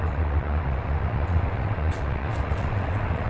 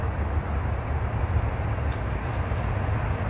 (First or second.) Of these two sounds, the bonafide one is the second